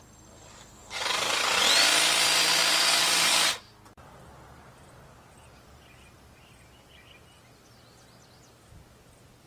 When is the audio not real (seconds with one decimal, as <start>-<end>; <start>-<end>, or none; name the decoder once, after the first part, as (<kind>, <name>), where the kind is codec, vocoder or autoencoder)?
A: 0.5-1.6 (codec, DAC); 2.7-3.7